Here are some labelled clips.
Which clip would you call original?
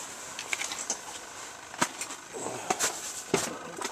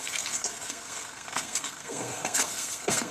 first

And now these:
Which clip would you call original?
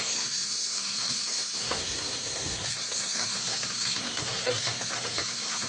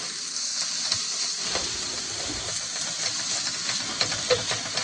second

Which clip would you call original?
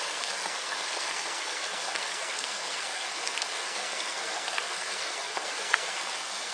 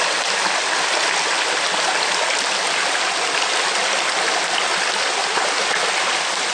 second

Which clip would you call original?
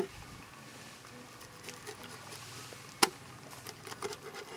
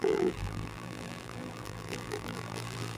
first